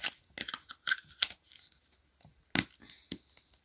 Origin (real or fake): real